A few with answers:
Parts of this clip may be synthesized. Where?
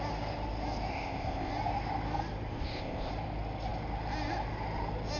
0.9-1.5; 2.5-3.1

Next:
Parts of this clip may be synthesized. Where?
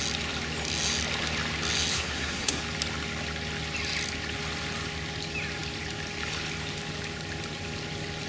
1.9-2.6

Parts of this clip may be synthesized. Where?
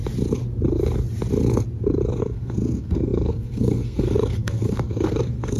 2.2-5.6